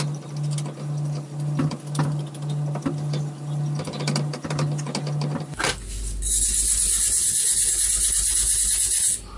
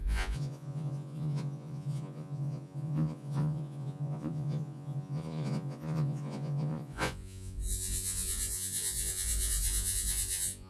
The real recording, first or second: first